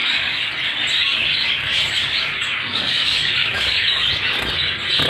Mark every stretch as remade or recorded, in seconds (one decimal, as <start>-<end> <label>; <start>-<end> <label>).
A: 0.0-0.5 remade; 0.5-1.0 recorded; 1.0-4.1 remade; 4.1-5.1 recorded